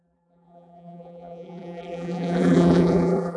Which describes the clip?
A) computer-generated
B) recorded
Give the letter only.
A